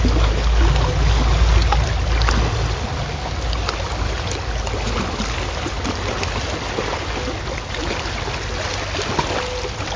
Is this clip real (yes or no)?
yes